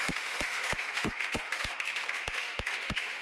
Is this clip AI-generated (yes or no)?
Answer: yes